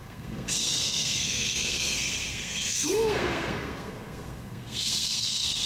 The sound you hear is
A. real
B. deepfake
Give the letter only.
B